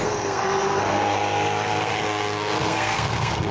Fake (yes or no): yes